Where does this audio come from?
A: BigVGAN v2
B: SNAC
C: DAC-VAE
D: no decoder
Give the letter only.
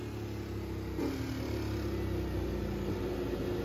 D